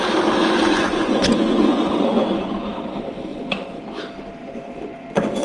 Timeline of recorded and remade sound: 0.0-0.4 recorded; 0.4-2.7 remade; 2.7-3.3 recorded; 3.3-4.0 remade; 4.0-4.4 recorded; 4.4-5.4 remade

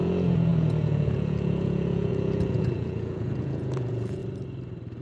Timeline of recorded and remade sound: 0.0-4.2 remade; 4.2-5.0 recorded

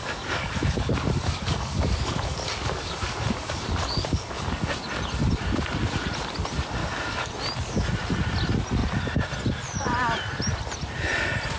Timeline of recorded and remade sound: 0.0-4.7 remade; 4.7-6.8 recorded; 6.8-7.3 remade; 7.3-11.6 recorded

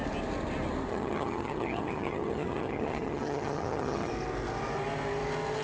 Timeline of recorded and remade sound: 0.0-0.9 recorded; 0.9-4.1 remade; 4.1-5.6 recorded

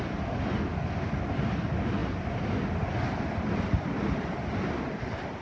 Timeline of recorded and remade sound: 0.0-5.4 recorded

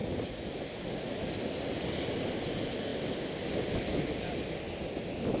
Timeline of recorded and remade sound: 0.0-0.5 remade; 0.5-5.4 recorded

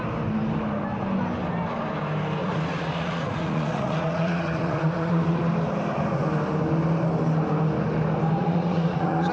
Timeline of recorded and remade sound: 0.0-2.4 recorded; 2.4-5.4 remade; 5.4-8.4 recorded; 8.4-9.3 remade

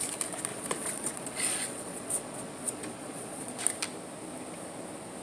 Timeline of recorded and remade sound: 0.0-0.5 recorded; 0.5-3.6 remade; 3.6-5.2 recorded